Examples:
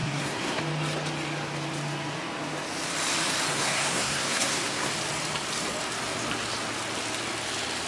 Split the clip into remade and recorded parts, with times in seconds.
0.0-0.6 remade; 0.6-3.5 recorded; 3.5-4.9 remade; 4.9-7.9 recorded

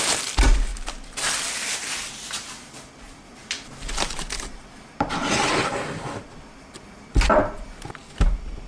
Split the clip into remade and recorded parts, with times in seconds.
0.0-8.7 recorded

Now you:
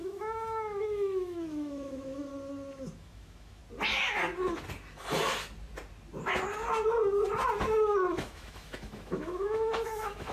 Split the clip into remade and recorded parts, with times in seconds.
0.0-2.3 remade; 2.3-3.0 recorded; 3.0-3.6 remade; 3.6-8.1 recorded; 8.1-10.3 remade

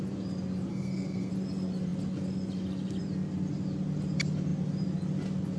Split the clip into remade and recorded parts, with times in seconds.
0.0-0.7 recorded; 0.7-1.3 remade; 1.3-5.6 recorded

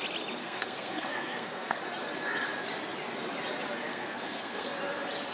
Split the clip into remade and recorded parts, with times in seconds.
0.0-0.4 recorded; 0.4-1.8 remade; 1.8-3.9 recorded; 3.9-4.7 remade; 4.7-5.3 recorded

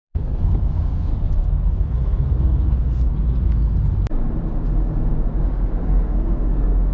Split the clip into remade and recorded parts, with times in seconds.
0.0-1.1 remade; 1.1-1.7 recorded; 1.7-3.1 remade; 3.1-5.4 recorded; 5.4-6.9 remade

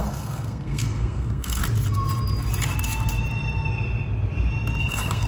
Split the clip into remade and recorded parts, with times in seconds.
0.0-1.6 remade; 1.6-4.8 recorded; 4.8-5.3 remade